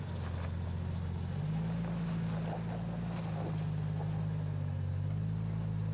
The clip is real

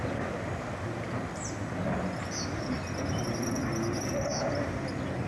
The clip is real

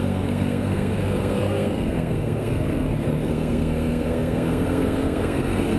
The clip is fake